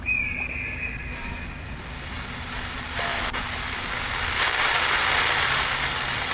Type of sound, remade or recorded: recorded